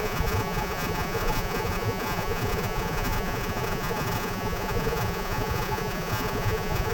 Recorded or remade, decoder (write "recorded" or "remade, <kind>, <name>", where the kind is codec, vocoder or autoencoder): remade, vocoder, Vocos